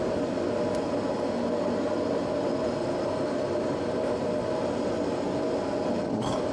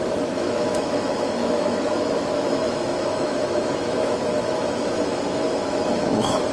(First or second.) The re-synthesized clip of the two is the second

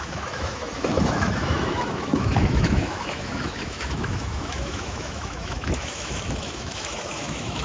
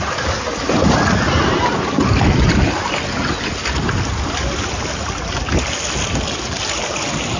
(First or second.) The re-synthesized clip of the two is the first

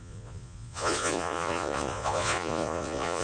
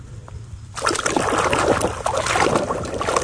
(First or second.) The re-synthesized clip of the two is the first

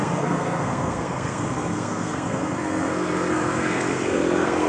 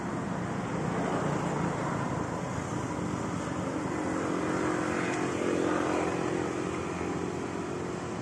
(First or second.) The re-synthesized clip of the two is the first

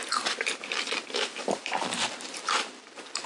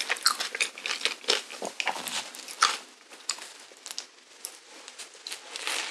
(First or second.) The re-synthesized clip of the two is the first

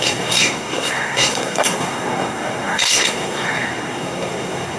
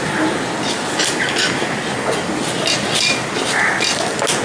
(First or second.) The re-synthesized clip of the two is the first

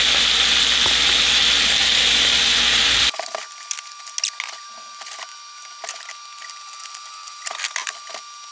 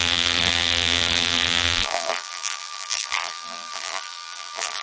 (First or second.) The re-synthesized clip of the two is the second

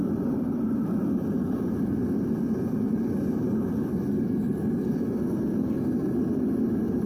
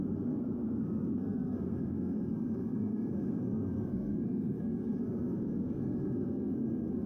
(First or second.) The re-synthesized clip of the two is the second